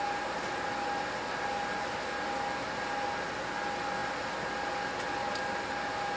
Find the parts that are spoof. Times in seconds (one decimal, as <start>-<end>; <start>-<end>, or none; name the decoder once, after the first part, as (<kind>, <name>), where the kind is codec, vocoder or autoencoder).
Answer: none